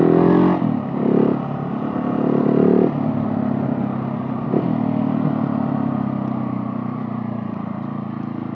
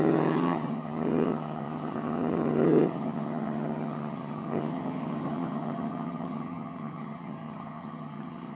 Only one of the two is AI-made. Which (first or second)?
second